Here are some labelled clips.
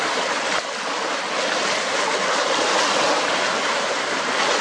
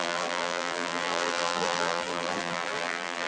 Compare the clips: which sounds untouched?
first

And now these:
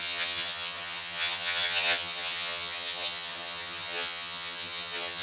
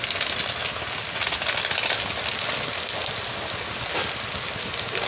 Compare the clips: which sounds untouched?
second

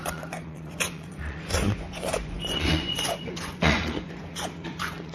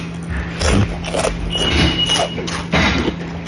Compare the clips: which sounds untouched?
second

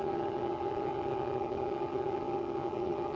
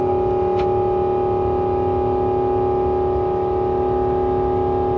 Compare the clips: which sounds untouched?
second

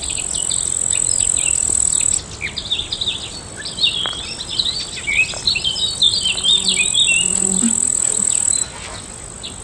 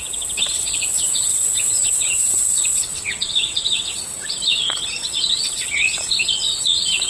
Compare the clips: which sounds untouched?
first